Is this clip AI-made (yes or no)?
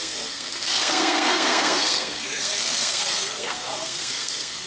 yes